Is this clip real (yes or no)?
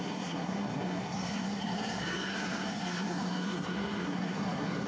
no